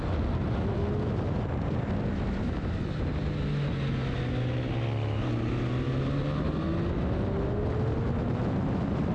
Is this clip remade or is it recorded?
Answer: recorded